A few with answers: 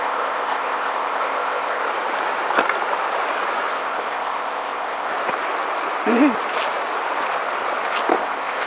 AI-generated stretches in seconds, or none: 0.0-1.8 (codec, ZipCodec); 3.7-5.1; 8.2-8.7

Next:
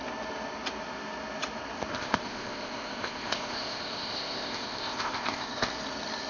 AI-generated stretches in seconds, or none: 1.9-5.7 (codec, ZipCodec)

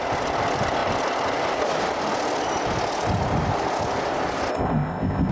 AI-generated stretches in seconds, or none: 4.5-5.3 (codec, ZipCodec)

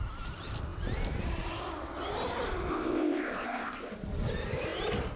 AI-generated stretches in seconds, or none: 2.7-3.9 (codec, ZipCodec)

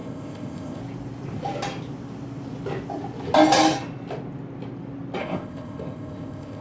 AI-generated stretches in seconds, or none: 0.0-0.8 (codec, ZipCodec); 5.2-6.6

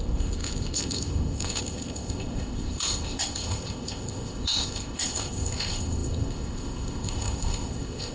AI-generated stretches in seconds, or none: 0.0-8.1 (codec, ZipCodec)

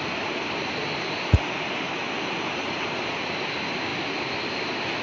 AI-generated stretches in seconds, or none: none